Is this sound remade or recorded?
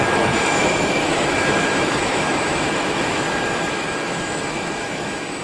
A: remade